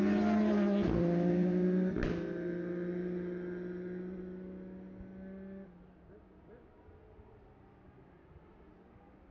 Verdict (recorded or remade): recorded